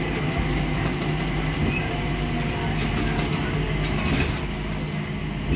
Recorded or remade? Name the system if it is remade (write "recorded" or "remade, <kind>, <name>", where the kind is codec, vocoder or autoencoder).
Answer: recorded